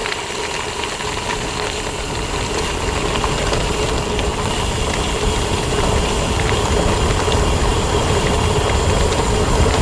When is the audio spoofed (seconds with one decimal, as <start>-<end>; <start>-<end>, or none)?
7.7-8.3